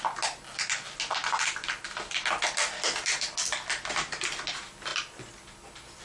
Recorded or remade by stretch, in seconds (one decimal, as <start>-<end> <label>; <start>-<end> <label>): 0.0-1.2 recorded; 1.2-1.8 remade; 1.8-2.6 recorded; 2.6-3.9 remade; 3.9-6.0 recorded